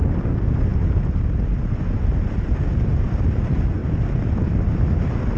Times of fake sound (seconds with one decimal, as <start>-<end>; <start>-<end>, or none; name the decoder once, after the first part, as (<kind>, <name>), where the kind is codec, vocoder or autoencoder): none